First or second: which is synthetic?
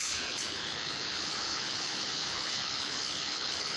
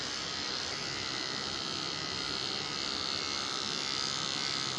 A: first